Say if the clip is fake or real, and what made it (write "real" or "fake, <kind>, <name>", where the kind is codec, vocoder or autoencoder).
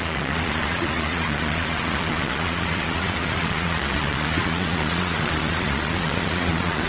fake, vocoder, Vocos